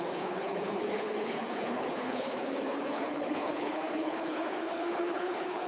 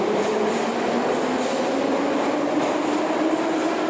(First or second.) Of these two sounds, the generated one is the first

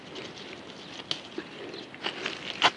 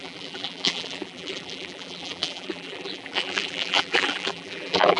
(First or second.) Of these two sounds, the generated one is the second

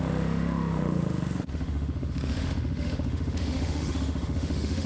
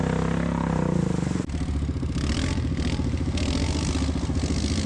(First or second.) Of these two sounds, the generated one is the first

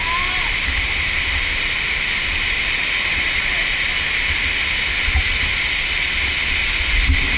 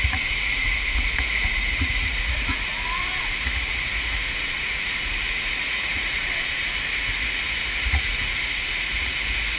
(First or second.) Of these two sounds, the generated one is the second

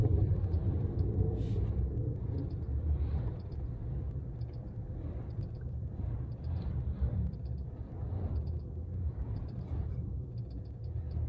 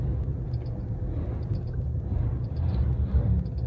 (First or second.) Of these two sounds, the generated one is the first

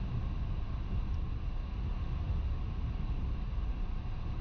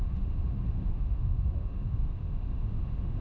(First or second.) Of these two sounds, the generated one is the second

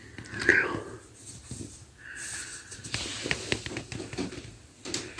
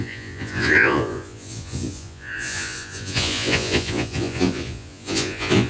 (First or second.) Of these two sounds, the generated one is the second